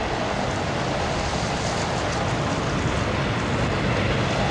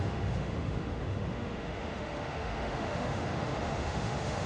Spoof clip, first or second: second